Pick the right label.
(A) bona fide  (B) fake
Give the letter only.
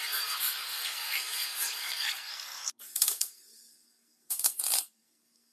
B